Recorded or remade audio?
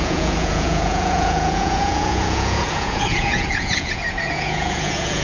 remade